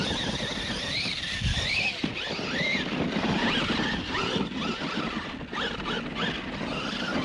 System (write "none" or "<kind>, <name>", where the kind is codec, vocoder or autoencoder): none